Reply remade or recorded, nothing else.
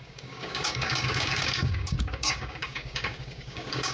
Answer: remade